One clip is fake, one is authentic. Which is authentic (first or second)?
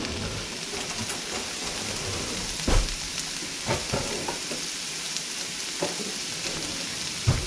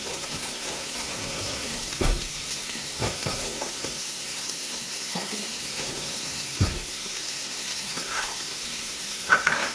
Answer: first